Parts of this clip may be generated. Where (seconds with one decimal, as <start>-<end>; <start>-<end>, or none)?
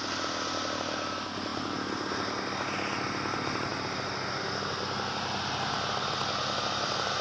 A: none